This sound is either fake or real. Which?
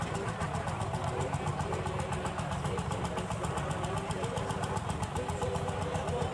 real